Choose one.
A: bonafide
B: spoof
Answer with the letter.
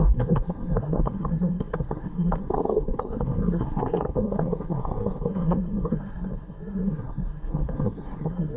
B